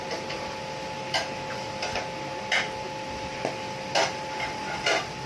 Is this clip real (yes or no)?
yes